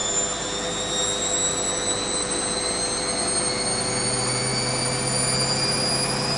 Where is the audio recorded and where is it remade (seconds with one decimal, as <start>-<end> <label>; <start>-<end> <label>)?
0.0-6.4 recorded